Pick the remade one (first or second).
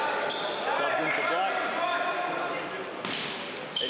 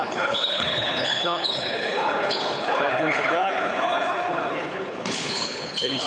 second